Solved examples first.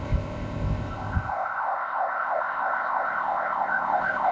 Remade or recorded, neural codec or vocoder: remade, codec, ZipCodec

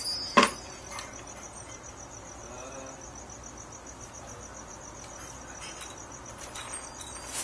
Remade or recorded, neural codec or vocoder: recorded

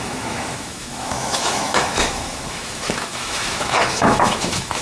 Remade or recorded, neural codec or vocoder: remade, autoencoder, DAC-VAE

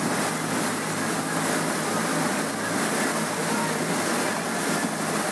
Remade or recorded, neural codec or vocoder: recorded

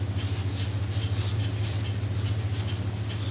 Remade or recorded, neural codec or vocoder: recorded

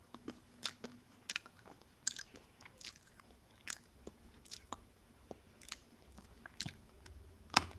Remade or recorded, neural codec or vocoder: remade, autoencoder, DAC-VAE